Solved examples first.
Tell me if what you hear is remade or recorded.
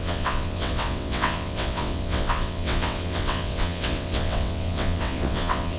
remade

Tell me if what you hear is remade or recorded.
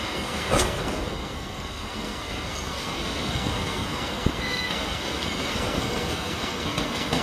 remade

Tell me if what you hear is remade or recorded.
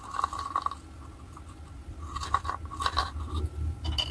recorded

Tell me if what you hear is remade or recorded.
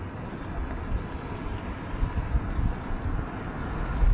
recorded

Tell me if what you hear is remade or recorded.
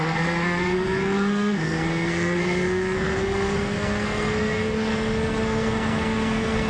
remade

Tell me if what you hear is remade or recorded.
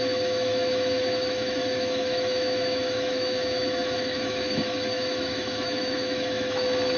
remade